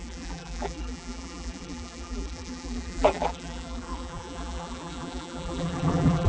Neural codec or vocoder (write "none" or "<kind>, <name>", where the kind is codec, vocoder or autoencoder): vocoder, BigVGAN v2